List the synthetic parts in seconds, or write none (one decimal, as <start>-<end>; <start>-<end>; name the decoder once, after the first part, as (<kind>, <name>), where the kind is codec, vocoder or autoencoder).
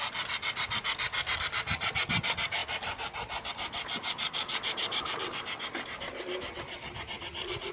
4.8-5.4 (vocoder, BigVGAN v2)